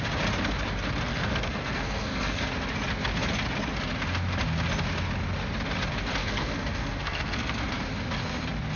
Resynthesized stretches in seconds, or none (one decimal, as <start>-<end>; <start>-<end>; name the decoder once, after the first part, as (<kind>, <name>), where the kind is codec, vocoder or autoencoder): 1.1-2.5 (codec, SNAC); 6.2-7.6